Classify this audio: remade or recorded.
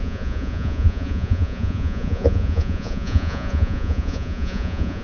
remade